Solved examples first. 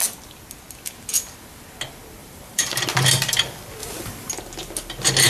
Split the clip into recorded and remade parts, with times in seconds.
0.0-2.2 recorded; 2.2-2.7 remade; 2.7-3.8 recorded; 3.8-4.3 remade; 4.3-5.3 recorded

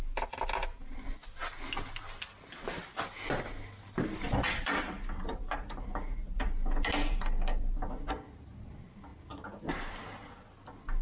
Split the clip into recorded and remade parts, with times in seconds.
0.0-11.0 recorded

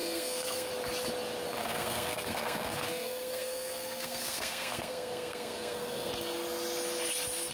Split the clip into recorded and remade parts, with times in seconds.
0.0-0.7 remade; 0.7-1.6 recorded; 1.6-6.1 remade; 6.1-7.5 recorded

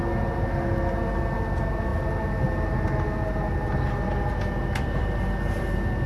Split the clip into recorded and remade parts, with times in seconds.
0.0-6.1 recorded

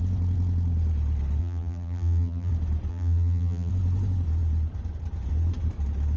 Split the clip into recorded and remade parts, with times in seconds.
0.0-1.4 recorded; 1.4-2.5 remade; 2.5-2.9 recorded; 2.9-3.7 remade; 3.7-6.2 recorded